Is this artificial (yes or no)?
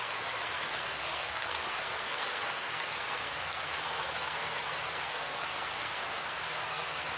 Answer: yes